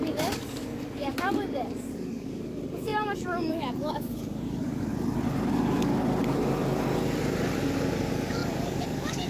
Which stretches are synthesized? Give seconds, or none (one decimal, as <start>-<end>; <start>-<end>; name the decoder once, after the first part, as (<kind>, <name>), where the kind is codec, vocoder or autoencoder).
0.0-4.9 (codec, DAC); 5.5-5.9; 8.0-9.3